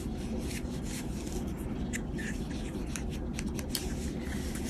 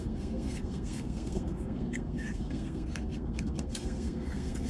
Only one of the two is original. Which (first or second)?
first